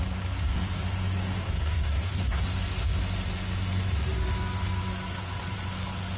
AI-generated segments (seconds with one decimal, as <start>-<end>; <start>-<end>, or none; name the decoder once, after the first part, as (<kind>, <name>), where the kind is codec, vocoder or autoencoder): 1.4-2.4 (codec, SNAC)